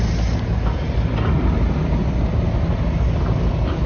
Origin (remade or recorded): recorded